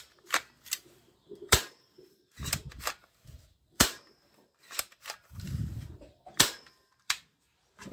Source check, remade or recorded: remade